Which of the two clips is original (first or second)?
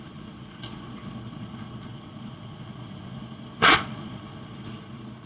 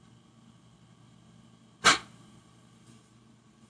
second